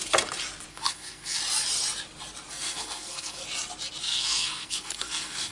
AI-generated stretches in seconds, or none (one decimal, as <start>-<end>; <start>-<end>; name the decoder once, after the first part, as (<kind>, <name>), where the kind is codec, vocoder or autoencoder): 0.7-1.4 (codec, SNAC); 2.5-3.4; 4.0-5.5